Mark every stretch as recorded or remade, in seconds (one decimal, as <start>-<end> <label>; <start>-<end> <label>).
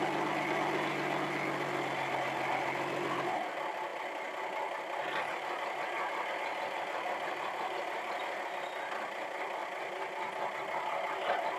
0.0-11.6 recorded